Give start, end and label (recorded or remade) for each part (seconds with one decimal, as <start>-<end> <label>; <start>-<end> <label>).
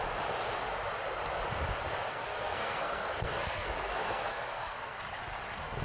0.0-2.1 recorded; 2.1-5.0 remade; 5.0-5.8 recorded